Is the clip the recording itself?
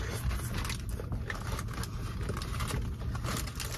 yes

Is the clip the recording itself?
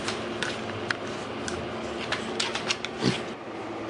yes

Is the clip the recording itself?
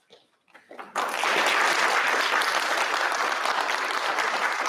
yes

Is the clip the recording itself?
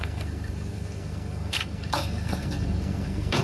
no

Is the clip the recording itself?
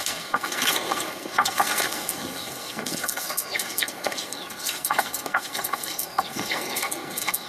no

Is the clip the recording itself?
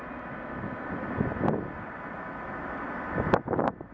yes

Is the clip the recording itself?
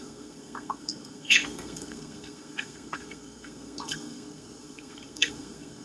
no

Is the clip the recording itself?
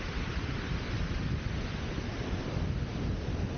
yes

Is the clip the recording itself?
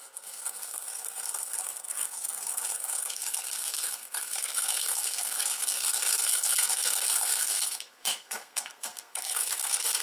no